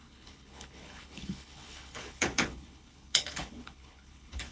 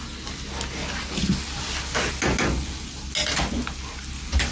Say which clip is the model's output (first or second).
first